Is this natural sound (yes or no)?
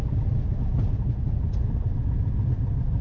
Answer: yes